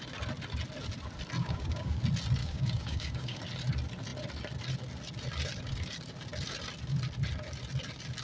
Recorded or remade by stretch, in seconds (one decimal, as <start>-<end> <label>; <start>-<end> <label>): 0.0-1.4 recorded; 1.4-2.0 remade; 2.0-2.4 recorded; 2.4-3.4 remade; 3.4-8.2 recorded